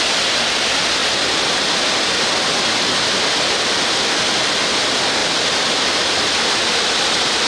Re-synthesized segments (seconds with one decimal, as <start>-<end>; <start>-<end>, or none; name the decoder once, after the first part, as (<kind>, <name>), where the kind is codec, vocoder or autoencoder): none